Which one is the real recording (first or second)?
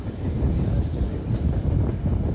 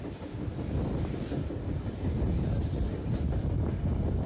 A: first